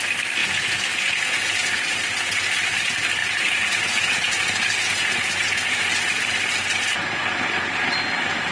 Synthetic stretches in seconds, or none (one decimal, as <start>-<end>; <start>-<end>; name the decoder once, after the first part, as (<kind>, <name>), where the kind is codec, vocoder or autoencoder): 0.4-2.4 (vocoder, Vocos); 3.2-5.8